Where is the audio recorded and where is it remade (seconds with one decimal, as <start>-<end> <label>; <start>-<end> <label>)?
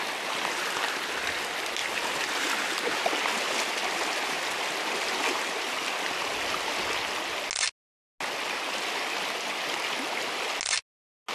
0.0-11.3 recorded